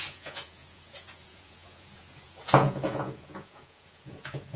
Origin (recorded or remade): remade